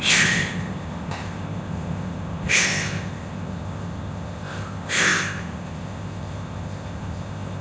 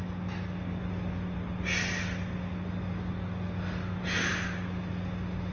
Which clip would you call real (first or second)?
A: second